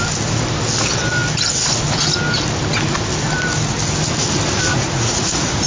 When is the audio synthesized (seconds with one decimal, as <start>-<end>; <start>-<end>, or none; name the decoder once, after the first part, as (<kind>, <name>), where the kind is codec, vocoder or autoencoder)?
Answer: 4.7-5.7 (vocoder, Vocos)